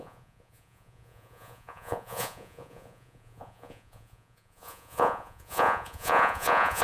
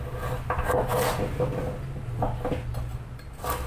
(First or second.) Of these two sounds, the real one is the second